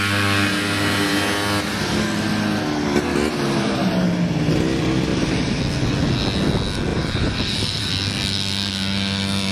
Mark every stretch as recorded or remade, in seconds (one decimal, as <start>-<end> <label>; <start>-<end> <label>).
0.0-5.1 recorded; 5.1-5.6 remade; 5.6-6.9 recorded; 6.9-7.9 remade; 7.9-9.5 recorded